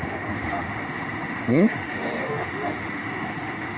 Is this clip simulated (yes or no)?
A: yes